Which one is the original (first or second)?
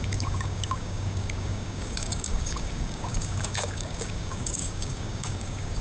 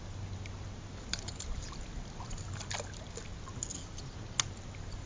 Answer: second